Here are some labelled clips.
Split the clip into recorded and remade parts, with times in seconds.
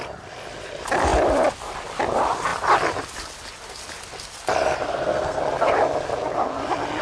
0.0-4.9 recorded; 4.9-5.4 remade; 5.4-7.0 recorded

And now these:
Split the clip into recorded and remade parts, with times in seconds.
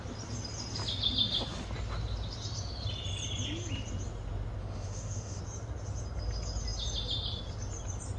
0.0-4.6 recorded; 4.6-5.4 remade; 5.4-8.2 recorded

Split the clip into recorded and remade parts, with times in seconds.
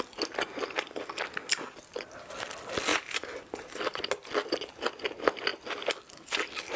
0.0-2.9 recorded; 2.9-4.1 remade; 4.1-6.8 recorded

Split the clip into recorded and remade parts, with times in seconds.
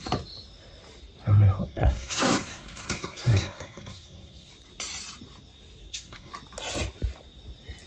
0.0-1.6 recorded; 1.6-4.5 remade; 4.5-5.8 recorded; 5.8-6.3 remade; 6.3-7.9 recorded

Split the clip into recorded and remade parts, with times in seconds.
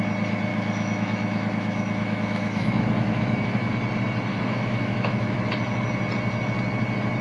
0.0-0.5 recorded; 0.5-3.7 remade; 3.7-4.3 recorded; 4.3-5.4 remade; 5.4-7.2 recorded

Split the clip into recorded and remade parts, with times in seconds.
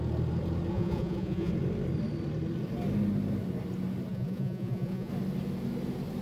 0.0-0.7 recorded; 0.7-1.5 remade; 1.5-4.1 recorded; 4.1-5.1 remade; 5.1-6.2 recorded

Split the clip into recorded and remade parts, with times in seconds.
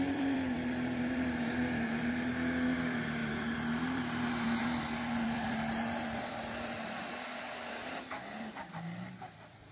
0.0-9.7 remade